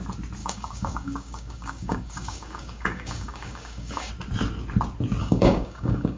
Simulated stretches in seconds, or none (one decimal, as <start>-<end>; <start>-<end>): 0.4-4.1; 5.2-6.2

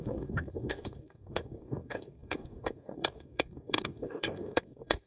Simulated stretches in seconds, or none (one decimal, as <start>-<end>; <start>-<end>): 0.0-5.1

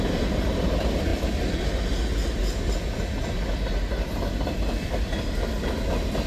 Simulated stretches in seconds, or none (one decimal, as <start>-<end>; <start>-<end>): none

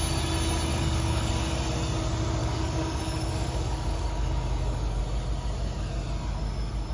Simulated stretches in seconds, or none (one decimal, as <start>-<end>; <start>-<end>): 0.7-1.3; 2.4-5.0

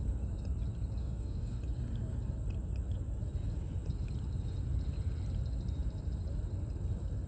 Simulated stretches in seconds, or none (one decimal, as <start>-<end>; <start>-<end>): 1.0-1.6

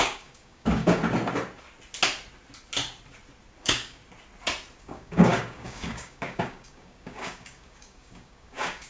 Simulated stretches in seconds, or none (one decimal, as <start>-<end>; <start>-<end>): 0.0-1.0; 3.6-4.0; 4.8-8.9